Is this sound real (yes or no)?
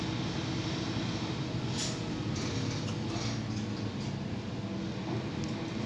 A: yes